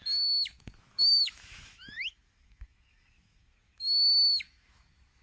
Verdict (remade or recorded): remade